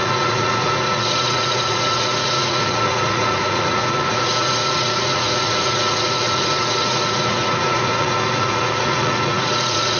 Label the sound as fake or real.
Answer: fake